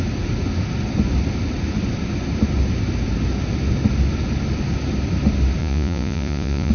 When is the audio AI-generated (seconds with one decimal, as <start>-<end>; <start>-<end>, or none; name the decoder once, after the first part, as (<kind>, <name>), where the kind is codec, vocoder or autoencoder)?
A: 5.6-6.7 (vocoder, Vocos)